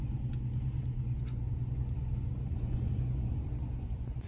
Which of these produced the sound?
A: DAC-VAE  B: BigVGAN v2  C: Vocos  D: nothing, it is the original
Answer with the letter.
C